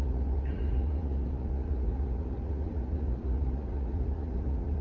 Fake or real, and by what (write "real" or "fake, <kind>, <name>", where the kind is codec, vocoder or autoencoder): fake, vocoder, Vocos